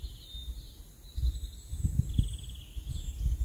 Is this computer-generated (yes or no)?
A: no